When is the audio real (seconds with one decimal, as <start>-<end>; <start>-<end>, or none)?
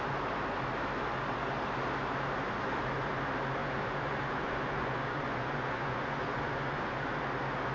0.0-3.6; 7.2-7.7